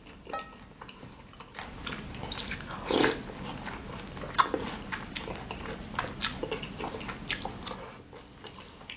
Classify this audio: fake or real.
real